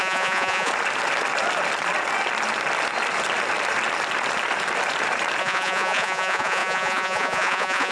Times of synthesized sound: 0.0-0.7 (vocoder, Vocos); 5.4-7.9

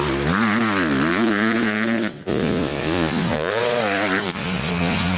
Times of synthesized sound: 1.1-3.6 (vocoder, Vocos); 4.2-5.2

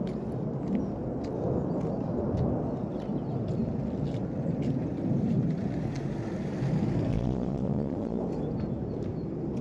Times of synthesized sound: 7.1-8.2 (vocoder, Vocos)

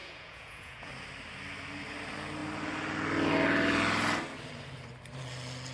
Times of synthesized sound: 0.0-0.9 (vocoder, Vocos)